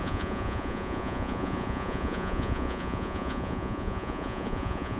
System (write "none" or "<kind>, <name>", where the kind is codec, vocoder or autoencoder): vocoder, Vocos